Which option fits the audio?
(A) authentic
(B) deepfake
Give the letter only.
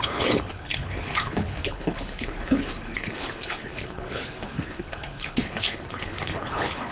B